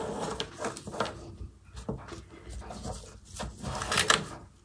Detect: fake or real real